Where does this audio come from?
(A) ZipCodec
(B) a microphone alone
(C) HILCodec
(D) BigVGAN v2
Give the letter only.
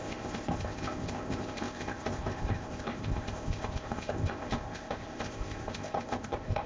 A